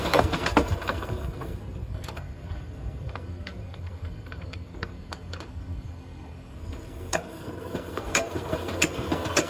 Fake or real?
fake